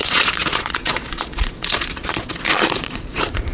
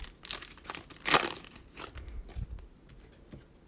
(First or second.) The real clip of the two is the second